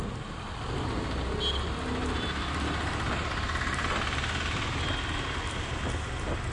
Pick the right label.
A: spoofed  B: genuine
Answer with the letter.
B